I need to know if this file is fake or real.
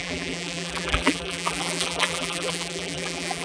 fake